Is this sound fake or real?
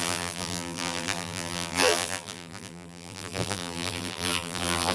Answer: fake